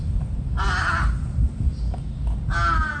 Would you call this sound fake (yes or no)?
no